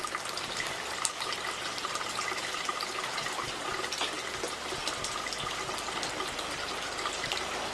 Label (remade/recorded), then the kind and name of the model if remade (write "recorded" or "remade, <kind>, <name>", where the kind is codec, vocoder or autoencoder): recorded